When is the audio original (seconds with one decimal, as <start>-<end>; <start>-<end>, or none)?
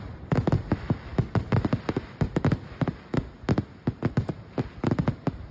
0.0-5.5